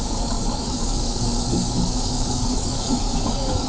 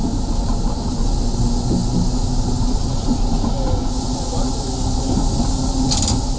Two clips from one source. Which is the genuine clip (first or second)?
second